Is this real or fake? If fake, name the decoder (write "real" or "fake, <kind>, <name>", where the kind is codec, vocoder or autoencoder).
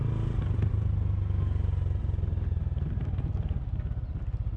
real